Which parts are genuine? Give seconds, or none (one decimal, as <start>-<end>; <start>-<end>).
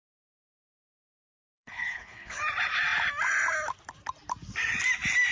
0.0-1.5; 2.4-5.3